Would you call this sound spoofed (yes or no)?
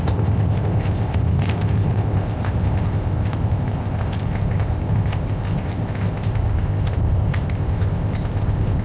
yes